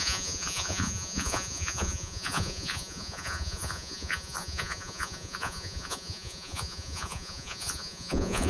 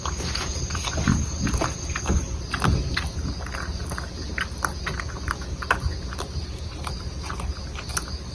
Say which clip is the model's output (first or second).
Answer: first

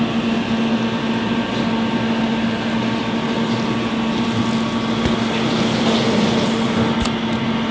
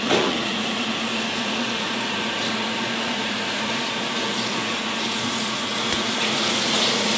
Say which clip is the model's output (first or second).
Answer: second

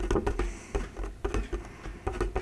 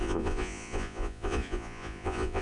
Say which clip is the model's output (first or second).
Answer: second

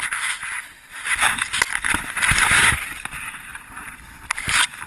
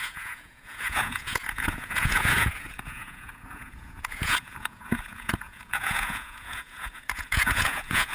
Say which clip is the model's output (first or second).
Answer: second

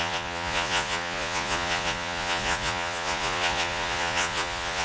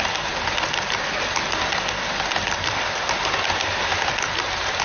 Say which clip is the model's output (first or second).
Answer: first